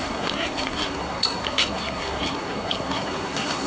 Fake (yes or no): yes